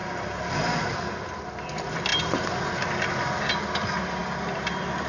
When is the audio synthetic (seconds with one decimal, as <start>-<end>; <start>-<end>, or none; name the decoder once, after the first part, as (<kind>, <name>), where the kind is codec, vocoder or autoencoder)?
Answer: none